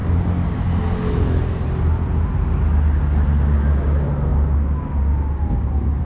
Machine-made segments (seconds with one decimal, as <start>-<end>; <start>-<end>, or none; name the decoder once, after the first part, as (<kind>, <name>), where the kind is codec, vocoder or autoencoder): none